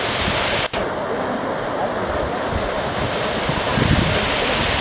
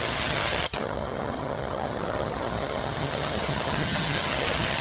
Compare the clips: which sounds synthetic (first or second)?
second